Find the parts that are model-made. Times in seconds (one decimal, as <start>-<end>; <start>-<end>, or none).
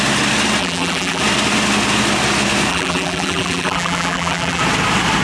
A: 0.6-1.2; 2.7-4.6